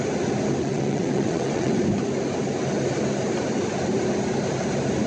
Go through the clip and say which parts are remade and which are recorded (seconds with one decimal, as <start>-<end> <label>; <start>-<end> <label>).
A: 0.0-0.6 recorded; 0.6-1.8 remade; 1.8-5.1 recorded